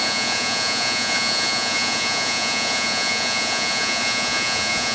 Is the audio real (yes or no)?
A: no